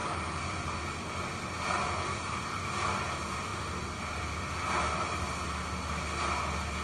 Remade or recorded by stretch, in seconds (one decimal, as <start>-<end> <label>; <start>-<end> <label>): 0.0-6.8 recorded